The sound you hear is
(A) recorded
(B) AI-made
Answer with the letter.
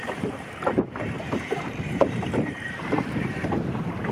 B